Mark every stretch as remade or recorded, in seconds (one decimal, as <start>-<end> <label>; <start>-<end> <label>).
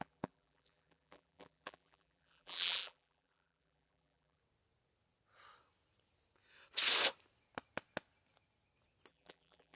0.0-4.4 remade; 4.4-9.1 recorded; 9.1-9.8 remade